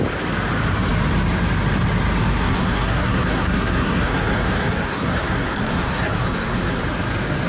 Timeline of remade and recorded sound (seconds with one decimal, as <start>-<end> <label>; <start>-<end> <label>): 0.0-2.4 recorded; 2.4-6.8 remade; 6.8-7.5 recorded